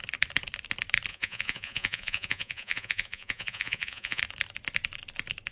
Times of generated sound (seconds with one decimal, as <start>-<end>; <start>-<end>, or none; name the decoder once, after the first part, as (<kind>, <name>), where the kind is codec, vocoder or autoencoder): 1.1-4.2 (vocoder, Vocos)